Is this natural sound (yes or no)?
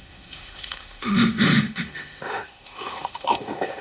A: no